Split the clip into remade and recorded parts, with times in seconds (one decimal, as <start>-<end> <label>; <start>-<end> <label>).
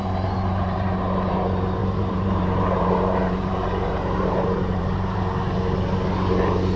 0.0-1.3 remade; 1.3-1.8 recorded; 1.8-5.2 remade; 5.2-6.8 recorded